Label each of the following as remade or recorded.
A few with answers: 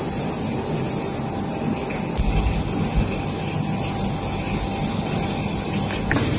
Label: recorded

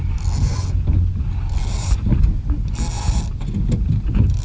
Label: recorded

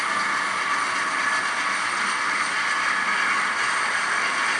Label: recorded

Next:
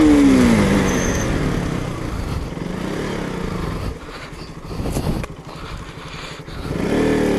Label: recorded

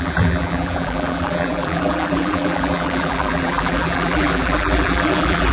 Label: remade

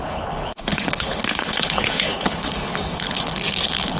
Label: remade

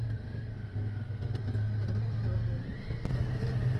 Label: recorded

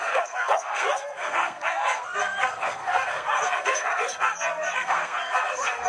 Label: remade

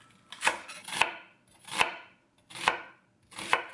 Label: recorded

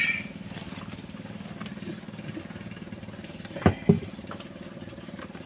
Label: recorded